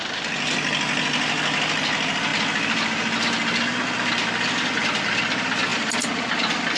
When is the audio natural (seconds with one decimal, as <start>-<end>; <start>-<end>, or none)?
0.0-5.7